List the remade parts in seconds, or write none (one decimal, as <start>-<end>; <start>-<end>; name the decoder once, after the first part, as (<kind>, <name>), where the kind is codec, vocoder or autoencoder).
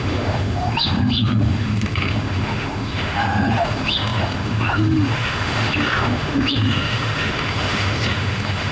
0.0-8.7 (autoencoder, DAC-VAE)